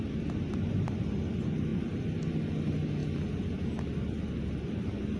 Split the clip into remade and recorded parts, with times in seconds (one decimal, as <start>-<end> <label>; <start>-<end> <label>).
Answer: 0.0-5.2 recorded